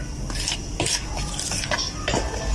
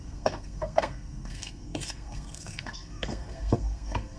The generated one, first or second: second